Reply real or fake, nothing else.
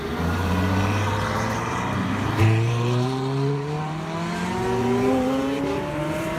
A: fake